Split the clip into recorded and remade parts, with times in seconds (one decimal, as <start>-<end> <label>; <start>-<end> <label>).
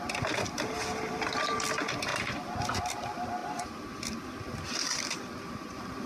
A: 0.0-2.1 remade; 2.1-2.8 recorded; 2.8-3.4 remade; 3.4-4.7 recorded; 4.7-6.1 remade